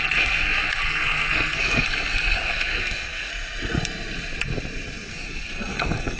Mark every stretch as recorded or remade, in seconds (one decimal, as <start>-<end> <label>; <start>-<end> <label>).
0.0-3.3 remade; 3.3-5.1 recorded; 5.1-6.2 remade